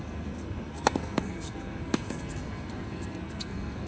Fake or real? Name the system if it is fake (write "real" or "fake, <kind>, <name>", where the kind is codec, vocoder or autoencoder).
fake, codec, SNAC